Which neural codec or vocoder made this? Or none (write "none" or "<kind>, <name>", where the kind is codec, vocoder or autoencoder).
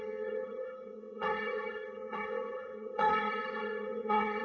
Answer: vocoder, HiFi-GAN